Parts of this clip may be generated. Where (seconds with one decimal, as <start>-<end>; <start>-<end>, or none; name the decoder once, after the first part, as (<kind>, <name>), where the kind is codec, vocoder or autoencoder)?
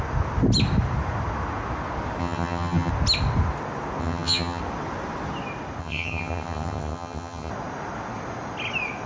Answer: 2.2-2.9 (vocoder, HiFi-GAN); 4.0-4.6; 5.8-7.5